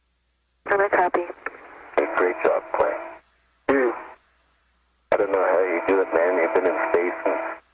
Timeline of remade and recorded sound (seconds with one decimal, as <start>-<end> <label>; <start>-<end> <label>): 0.0-2.1 recorded; 2.1-4.6 remade; 4.6-7.7 recorded